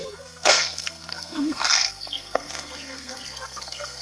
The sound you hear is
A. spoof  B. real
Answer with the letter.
A